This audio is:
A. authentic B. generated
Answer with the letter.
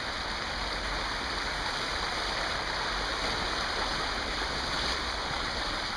A